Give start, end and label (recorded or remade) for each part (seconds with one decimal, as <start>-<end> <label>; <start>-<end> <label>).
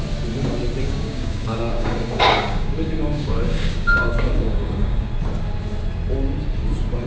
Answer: 0.0-0.8 recorded; 0.8-5.1 remade; 5.1-7.1 recorded